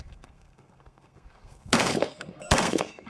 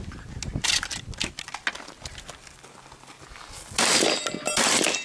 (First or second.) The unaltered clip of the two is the second